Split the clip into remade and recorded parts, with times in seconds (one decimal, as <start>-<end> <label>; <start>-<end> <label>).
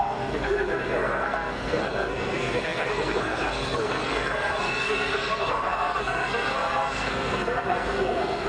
0.0-8.5 remade